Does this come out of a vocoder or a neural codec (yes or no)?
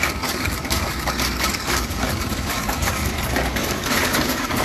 yes